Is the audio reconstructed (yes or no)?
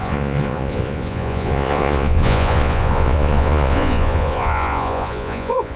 yes